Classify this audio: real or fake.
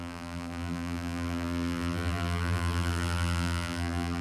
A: fake